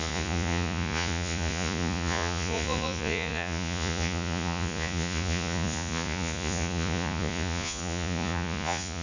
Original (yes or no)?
no